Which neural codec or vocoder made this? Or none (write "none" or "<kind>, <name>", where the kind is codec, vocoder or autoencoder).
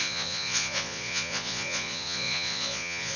vocoder, Vocos